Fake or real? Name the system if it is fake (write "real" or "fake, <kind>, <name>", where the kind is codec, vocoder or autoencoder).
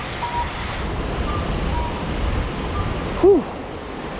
real